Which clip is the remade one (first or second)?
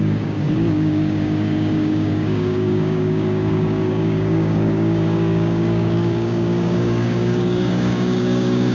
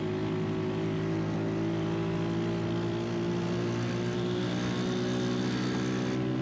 first